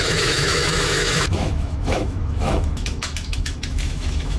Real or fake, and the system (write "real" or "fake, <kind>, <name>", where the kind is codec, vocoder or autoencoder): fake, autoencoder, DAC-VAE